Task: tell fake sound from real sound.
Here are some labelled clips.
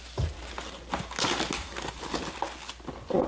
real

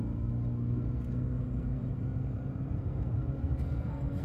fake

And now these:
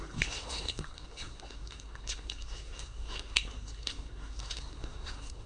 fake